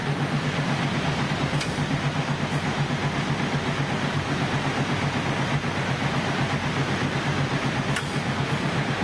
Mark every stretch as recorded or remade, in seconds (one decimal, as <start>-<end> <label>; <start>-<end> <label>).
0.0-9.0 recorded